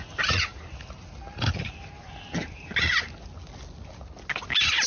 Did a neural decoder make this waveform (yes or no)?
no